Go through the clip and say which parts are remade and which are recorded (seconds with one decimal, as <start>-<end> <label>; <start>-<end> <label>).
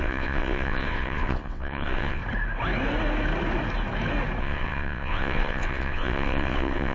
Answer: 0.0-2.2 remade; 2.2-4.4 recorded; 4.4-6.9 remade